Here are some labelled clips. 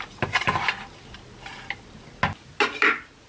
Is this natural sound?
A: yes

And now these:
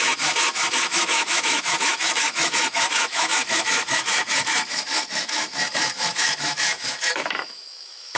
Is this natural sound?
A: no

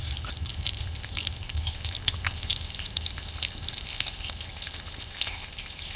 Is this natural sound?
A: no